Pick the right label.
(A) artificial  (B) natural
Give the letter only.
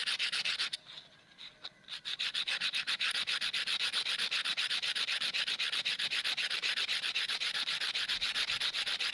B